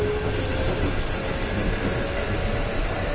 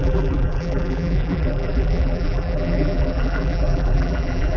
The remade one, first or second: second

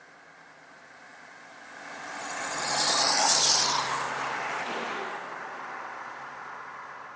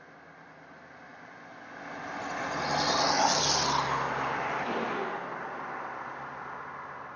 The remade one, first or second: first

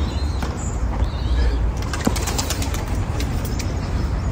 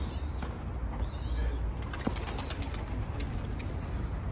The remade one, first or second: first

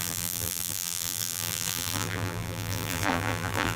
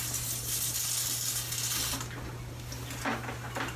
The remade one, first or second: first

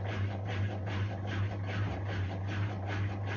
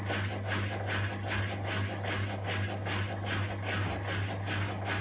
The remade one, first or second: first